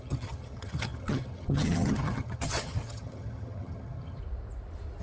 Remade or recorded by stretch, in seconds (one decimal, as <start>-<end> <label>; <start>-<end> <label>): 0.0-4.2 remade; 4.2-5.0 recorded